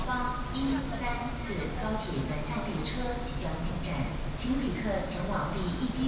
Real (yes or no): yes